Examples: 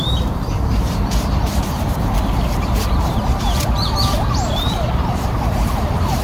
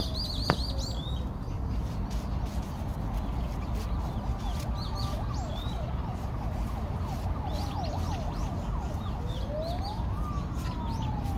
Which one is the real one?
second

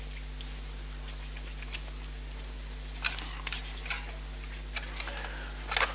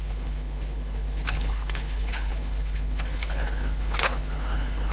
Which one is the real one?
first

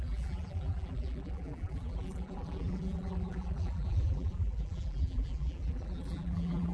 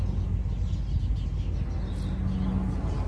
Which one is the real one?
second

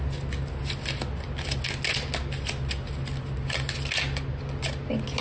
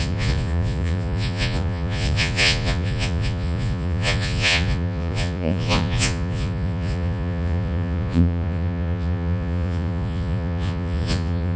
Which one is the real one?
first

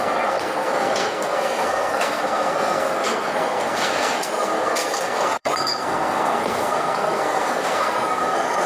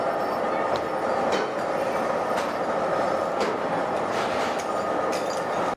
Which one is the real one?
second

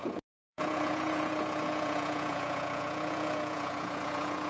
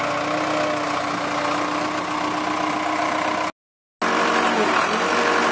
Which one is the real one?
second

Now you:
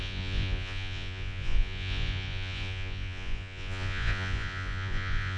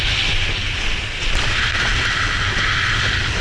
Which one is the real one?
second